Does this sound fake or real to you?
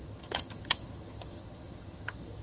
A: fake